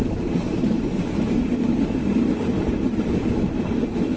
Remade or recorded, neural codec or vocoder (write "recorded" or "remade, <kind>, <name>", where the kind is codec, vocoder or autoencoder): recorded